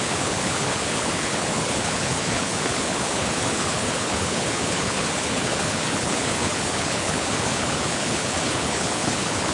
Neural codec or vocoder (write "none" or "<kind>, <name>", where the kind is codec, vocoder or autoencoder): codec, HILCodec